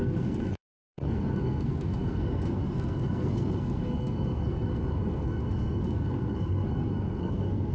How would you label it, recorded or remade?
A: remade